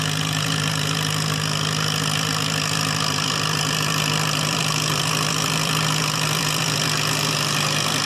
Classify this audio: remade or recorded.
remade